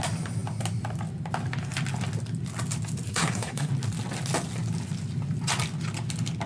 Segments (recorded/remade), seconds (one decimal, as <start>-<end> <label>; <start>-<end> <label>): 0.0-3.1 recorded; 3.1-3.7 remade; 3.7-6.5 recorded